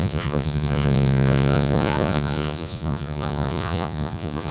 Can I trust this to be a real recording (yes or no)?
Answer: no